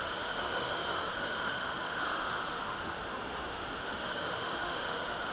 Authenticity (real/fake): fake